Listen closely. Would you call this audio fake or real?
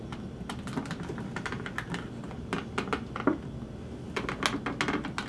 real